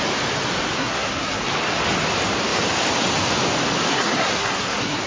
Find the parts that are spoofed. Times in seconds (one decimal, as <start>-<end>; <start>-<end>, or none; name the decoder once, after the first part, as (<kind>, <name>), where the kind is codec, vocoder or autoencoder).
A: 0.8-1.4 (codec, SNAC); 3.9-5.1